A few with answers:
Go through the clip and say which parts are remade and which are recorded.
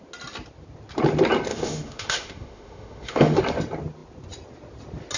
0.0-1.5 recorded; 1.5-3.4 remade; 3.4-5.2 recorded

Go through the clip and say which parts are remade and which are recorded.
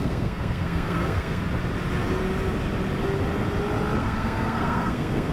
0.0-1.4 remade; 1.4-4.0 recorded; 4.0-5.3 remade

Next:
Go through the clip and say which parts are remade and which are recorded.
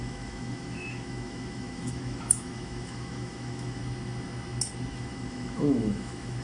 0.0-3.8 remade; 3.8-4.9 recorded; 4.9-6.4 remade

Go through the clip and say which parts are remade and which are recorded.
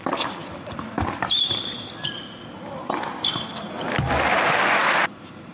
0.0-0.4 recorded; 0.4-3.7 remade; 3.7-4.8 recorded; 4.8-5.5 remade